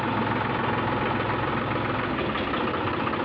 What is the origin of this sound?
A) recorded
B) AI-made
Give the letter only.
A